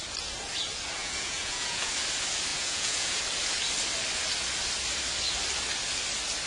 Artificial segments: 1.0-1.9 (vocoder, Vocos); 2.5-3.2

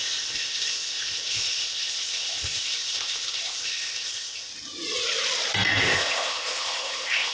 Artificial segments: 0.0-4.5 (codec, ZipCodec); 5.8-7.3

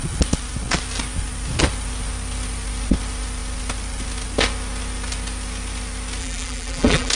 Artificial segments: 6.2-7.1 (vocoder, BigVGAN v2)

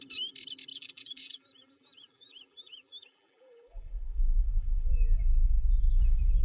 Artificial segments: 0.7-3.9 (vocoder, BigVGAN v2); 4.5-6.4